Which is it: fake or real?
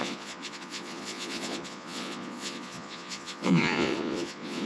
fake